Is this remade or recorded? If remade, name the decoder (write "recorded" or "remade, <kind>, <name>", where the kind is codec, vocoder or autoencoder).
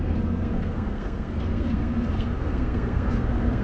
remade, codec, SNAC